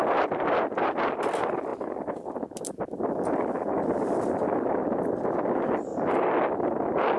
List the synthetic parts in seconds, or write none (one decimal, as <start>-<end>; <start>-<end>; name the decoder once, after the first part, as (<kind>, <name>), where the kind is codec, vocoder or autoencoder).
none